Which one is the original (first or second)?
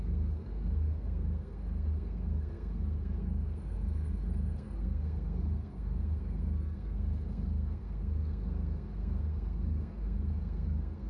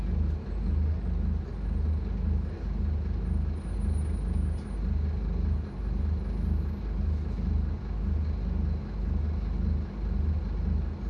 second